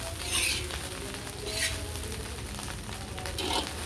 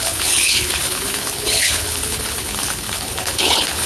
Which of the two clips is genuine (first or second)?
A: first